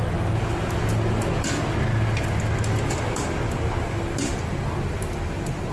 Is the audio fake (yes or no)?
no